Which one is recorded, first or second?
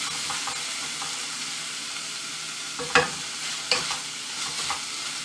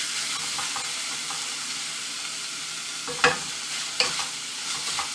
first